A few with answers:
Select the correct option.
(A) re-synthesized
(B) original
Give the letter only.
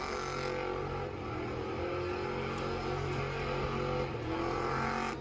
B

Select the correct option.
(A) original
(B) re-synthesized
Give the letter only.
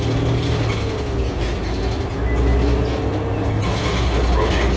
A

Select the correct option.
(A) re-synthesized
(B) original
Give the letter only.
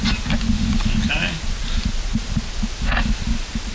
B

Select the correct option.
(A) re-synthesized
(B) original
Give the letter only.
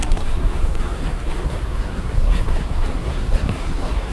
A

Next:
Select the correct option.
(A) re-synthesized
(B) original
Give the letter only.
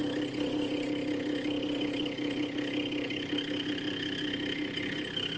B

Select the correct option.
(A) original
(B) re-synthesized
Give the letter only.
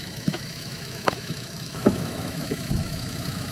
B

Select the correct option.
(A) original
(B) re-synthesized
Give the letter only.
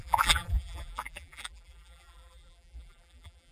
B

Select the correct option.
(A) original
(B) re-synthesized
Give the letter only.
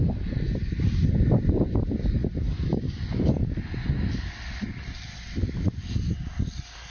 A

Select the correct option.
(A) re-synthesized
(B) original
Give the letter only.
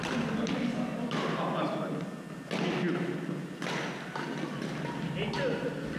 B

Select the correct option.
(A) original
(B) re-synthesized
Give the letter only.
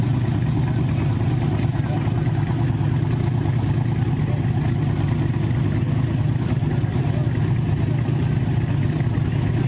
A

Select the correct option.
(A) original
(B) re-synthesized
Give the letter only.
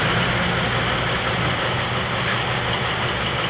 A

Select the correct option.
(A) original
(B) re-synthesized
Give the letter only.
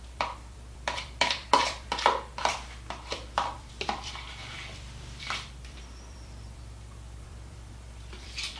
B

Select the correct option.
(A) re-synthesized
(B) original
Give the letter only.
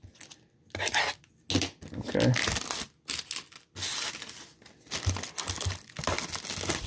B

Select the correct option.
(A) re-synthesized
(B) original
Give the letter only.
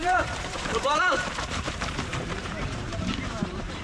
A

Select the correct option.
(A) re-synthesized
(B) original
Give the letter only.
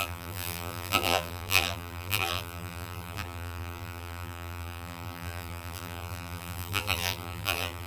A